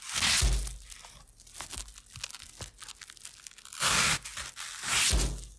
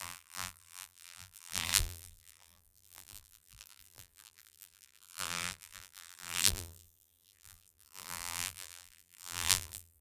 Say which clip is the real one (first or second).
first